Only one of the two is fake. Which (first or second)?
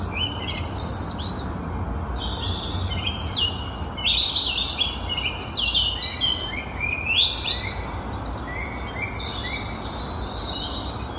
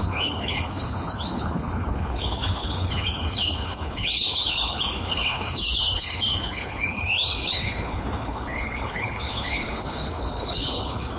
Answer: second